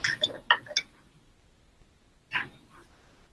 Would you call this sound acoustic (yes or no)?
yes